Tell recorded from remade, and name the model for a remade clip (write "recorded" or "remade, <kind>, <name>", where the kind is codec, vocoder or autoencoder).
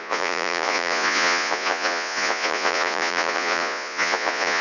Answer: remade, vocoder, Vocos